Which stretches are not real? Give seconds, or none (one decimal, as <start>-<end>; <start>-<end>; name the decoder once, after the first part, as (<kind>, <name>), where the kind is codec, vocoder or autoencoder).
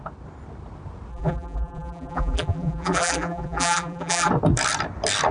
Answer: 1.1-4.3 (vocoder, BigVGAN v2)